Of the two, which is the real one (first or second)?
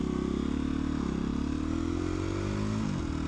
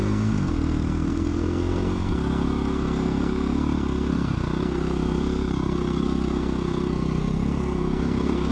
first